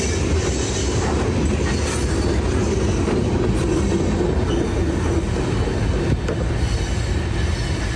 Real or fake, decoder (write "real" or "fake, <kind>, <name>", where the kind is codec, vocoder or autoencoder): real